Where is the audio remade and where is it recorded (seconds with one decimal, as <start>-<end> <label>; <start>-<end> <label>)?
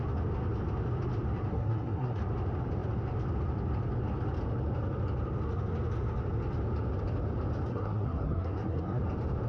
0.0-1.5 recorded; 1.5-2.2 remade; 2.2-7.7 recorded; 7.7-9.0 remade; 9.0-9.5 recorded